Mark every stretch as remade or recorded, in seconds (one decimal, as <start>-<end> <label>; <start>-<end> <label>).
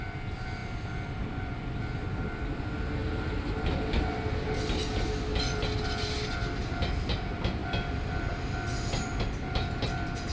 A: 0.0-7.6 recorded; 7.6-8.5 remade; 8.5-10.3 recorded